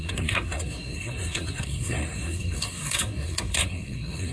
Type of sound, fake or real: fake